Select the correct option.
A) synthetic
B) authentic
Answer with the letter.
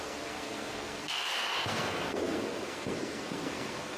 A